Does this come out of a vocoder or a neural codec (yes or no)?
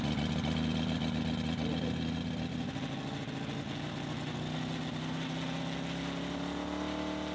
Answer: no